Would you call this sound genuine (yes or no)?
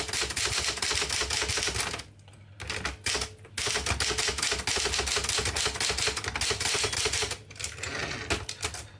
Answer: yes